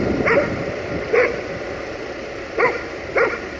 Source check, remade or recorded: recorded